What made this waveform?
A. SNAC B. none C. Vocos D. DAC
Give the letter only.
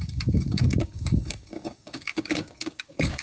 D